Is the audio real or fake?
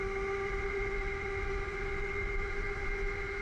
real